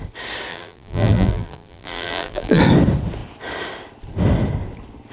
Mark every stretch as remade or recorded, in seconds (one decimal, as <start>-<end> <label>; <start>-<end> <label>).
0.0-0.5 recorded; 0.5-2.6 remade; 2.6-5.1 recorded